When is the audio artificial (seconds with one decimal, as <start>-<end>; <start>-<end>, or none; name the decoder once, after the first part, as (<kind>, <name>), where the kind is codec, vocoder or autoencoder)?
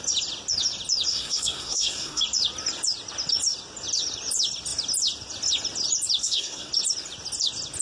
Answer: 1.1-2.2 (codec, SNAC); 6.2-6.7